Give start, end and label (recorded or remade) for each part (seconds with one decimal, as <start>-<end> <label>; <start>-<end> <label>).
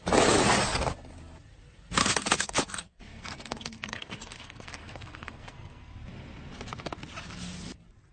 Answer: 0.0-2.0 recorded; 2.0-5.9 remade; 5.9-8.1 recorded